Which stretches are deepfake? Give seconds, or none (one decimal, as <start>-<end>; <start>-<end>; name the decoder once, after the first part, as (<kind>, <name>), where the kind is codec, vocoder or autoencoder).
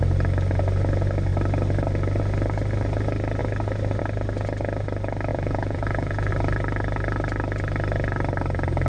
5.3-6.3 (vocoder, Vocos)